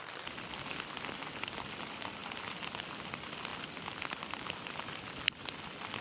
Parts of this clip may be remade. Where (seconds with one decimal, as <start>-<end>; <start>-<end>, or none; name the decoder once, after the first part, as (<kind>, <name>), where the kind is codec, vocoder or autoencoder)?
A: none